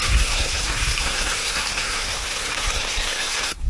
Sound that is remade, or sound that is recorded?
remade